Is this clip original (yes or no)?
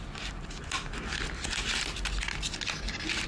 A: yes